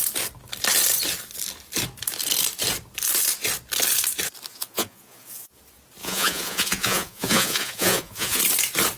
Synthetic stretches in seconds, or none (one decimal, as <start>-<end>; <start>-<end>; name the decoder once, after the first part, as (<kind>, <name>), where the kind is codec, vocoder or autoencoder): 4.5-5.6 (vocoder, Vocos); 6.0-8.4